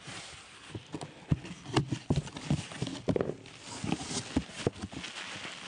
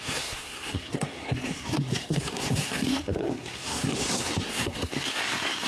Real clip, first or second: first